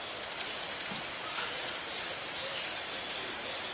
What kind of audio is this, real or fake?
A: fake